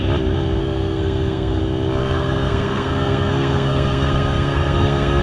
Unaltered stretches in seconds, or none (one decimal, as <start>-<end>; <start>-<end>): 0.0-0.6; 1.6-2.0